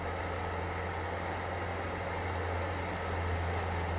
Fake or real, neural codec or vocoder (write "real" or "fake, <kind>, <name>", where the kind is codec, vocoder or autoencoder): real